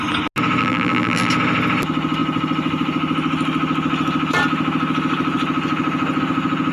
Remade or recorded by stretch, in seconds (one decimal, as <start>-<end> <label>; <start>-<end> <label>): 0.0-0.6 recorded; 0.6-1.3 remade; 1.3-6.7 recorded